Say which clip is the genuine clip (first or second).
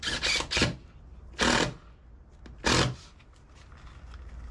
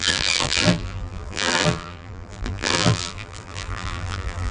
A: first